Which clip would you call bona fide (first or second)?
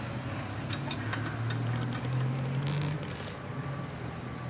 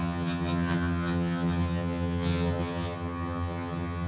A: first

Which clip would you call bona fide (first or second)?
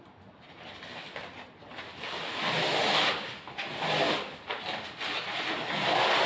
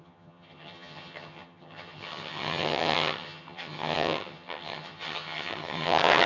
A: first